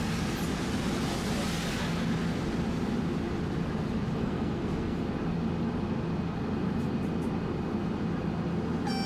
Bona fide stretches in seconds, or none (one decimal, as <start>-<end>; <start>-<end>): 0.0-4.2; 5.0-9.1